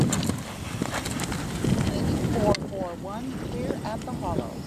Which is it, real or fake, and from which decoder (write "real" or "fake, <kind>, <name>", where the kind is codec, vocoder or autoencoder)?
real